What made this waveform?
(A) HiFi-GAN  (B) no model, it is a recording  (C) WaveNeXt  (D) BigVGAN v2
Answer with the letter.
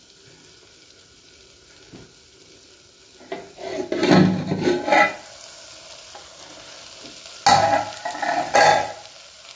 B